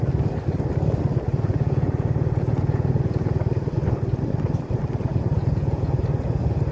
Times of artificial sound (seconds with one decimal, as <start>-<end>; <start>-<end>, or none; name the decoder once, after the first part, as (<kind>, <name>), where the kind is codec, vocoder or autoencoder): 1.3-3.3 (vocoder, Vocos); 5.1-6.0